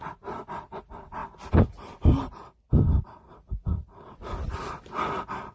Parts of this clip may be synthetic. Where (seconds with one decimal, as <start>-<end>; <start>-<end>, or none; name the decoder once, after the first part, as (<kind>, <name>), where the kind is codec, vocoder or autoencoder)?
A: none